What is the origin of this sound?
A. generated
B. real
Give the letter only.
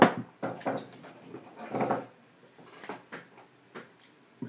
B